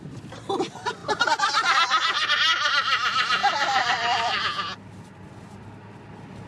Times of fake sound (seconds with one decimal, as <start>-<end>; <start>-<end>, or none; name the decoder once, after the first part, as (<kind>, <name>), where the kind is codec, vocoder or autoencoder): 3.4-4.4 (vocoder, BigVGAN v2)